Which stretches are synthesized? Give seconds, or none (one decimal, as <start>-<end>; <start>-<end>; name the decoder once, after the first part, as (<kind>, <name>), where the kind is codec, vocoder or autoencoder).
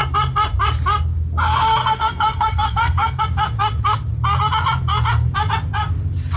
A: 1.8-3.2 (codec, SNAC)